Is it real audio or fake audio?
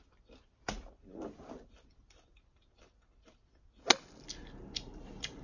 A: real